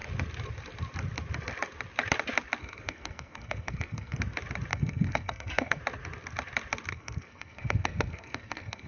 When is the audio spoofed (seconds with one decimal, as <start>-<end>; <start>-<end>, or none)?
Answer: 2.6-4.2; 4.7-5.8; 6.9-8.9